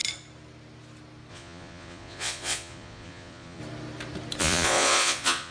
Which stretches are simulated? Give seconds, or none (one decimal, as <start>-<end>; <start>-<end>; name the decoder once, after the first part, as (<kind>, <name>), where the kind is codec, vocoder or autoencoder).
1.3-3.6 (vocoder, Vocos); 4.4-5.5